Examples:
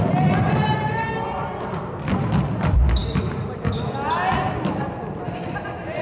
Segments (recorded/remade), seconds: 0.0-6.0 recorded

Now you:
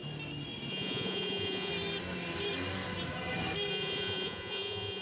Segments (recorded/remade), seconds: 0.0-0.7 recorded; 0.7-1.7 remade; 1.7-3.7 recorded; 3.7-5.0 remade

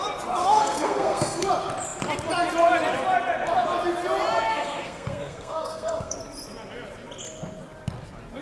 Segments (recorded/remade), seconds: 0.0-0.4 recorded; 0.4-1.5 remade; 1.5-4.5 recorded; 4.5-6.2 remade; 6.2-8.4 recorded

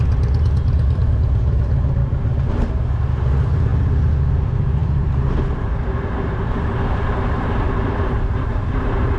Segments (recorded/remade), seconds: 0.0-2.0 remade; 2.0-2.5 recorded; 2.5-3.7 remade; 3.7-4.3 recorded; 4.3-9.2 remade

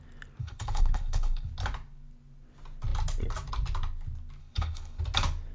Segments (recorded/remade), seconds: 0.0-0.4 recorded; 0.4-1.5 remade; 1.5-4.4 recorded; 4.4-5.0 remade; 5.0-5.5 recorded